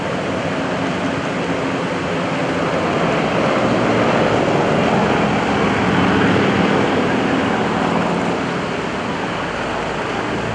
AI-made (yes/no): no